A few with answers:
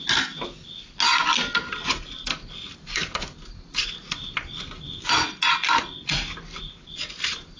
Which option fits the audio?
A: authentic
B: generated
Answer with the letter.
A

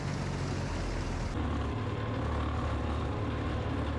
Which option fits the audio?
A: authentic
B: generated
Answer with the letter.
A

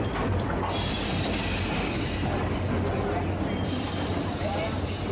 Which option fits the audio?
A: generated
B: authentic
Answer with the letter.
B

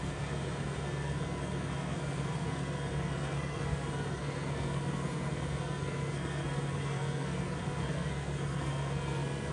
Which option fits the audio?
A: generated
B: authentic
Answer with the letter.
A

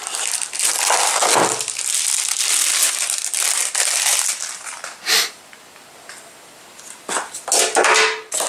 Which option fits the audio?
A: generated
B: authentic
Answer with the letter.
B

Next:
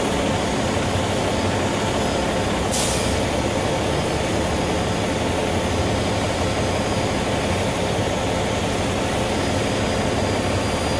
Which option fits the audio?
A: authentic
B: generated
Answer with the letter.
A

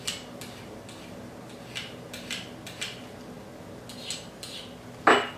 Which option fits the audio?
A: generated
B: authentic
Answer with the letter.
B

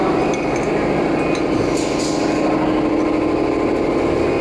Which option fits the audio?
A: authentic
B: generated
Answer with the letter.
A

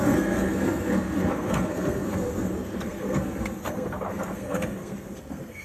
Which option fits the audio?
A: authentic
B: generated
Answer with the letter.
B